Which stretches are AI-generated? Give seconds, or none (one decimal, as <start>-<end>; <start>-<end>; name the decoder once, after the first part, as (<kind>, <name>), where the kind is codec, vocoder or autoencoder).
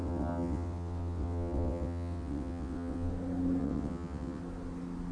0.0-3.1 (vocoder, WaveNeXt); 3.6-4.4